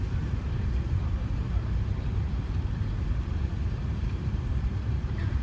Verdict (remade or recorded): remade